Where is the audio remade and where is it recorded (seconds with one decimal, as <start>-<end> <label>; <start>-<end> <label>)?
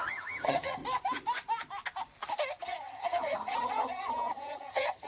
0.0-0.8 remade; 0.8-2.6 recorded; 2.6-5.1 remade